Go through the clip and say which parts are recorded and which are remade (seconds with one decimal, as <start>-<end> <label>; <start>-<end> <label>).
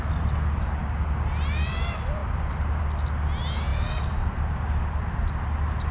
0.0-5.9 recorded